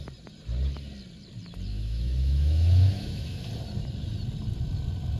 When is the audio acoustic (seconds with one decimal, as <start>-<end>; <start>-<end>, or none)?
0.0-1.7; 3.4-5.2